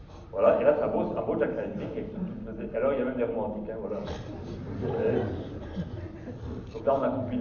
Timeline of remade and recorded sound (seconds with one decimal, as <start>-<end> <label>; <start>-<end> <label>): 0.0-7.4 recorded